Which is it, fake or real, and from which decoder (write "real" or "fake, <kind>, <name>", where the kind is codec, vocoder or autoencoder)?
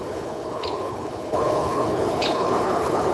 fake, codec, HILCodec